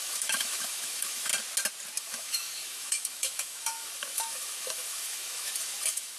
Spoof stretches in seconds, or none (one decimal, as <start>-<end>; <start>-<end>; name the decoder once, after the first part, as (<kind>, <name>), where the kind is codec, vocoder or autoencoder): 0.0-1.3 (autoencoder, DAC-VAE); 2.0-6.2